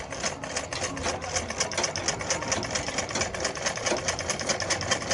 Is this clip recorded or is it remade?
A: recorded